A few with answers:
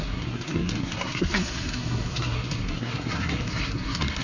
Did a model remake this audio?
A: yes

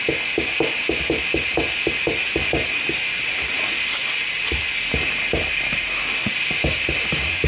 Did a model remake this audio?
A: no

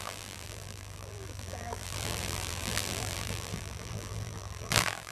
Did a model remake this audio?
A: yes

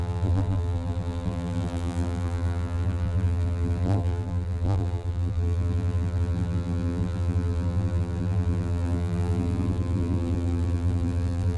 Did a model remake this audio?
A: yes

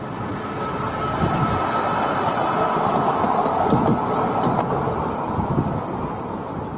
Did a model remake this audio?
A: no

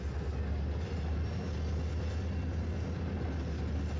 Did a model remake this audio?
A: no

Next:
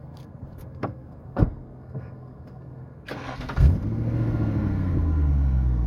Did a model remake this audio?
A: yes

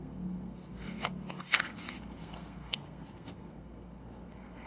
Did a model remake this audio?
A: yes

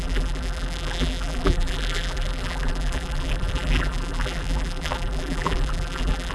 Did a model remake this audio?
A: yes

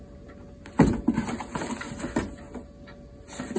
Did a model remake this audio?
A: no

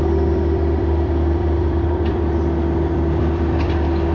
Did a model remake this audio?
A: yes